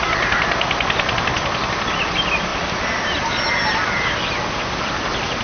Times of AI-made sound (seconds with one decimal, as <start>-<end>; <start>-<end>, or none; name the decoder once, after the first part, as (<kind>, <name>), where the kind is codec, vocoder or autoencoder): none